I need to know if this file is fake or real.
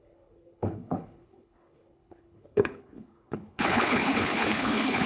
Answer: fake